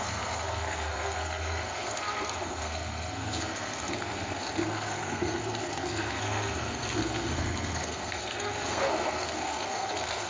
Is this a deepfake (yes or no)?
yes